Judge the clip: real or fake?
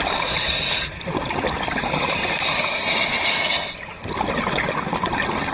real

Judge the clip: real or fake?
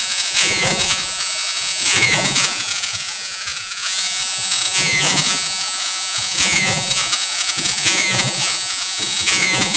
fake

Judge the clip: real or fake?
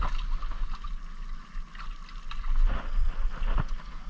real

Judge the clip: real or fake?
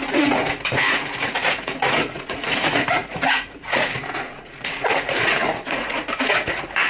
fake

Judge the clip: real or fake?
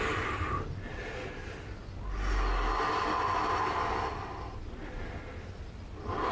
real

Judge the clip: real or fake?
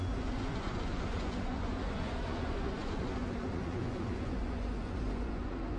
fake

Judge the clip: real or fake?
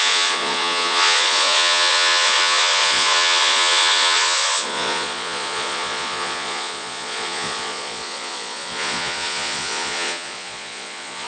fake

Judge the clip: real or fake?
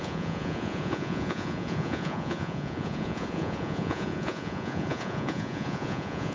fake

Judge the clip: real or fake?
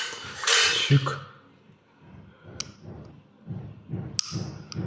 real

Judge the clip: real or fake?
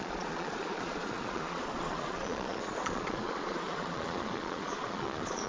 fake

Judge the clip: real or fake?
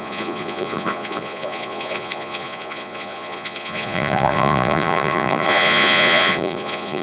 fake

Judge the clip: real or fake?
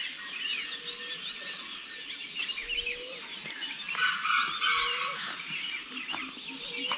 real